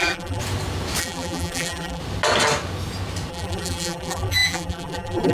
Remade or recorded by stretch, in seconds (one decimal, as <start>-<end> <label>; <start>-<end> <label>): 0.0-0.4 remade; 0.4-1.0 recorded; 1.0-2.0 remade; 2.0-3.3 recorded; 3.3-5.3 remade